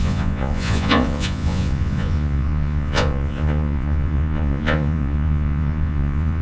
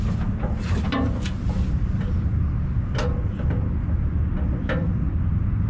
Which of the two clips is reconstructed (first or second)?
first